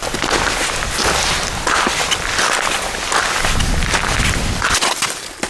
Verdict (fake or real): real